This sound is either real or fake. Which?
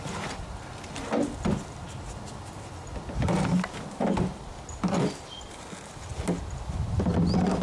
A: real